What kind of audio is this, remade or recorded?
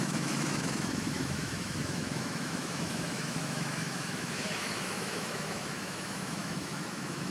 remade